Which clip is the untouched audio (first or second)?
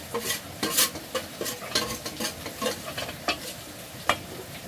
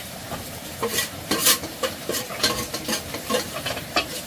first